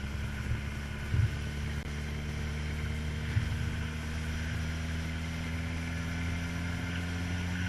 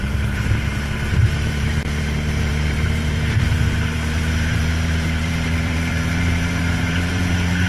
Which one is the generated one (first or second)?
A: second